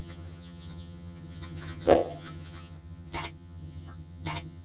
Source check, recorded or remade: remade